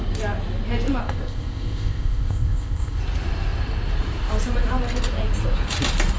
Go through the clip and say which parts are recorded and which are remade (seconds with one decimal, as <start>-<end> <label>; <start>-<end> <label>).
0.0-1.0 recorded; 1.0-3.0 remade; 3.0-6.2 recorded